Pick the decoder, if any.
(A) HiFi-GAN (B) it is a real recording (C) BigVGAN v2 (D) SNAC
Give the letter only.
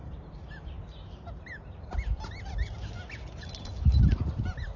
B